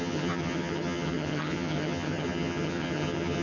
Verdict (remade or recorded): remade